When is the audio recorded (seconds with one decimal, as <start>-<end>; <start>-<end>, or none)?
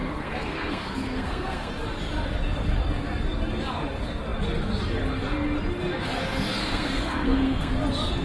1.7-6.5; 7.7-8.2